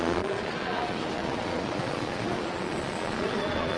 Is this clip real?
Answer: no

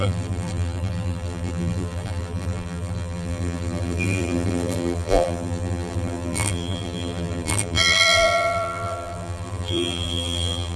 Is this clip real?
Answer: no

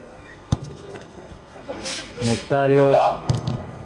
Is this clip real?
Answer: no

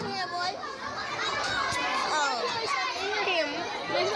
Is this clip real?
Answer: yes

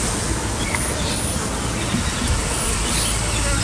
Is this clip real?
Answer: yes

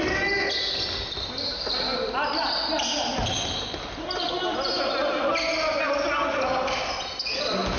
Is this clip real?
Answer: yes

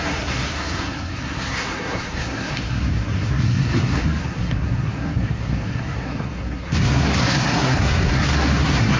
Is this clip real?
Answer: no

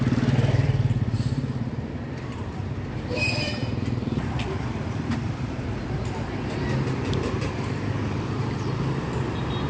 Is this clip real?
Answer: no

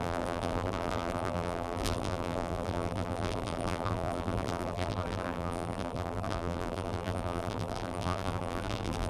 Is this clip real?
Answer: no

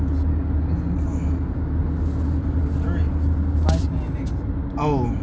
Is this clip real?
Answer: yes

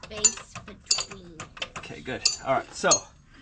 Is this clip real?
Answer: yes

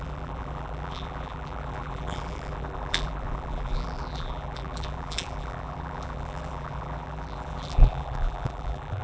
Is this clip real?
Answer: no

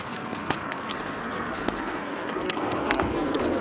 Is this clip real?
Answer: no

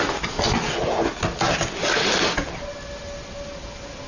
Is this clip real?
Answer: yes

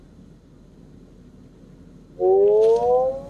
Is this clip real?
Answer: yes